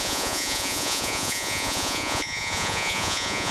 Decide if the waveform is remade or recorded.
remade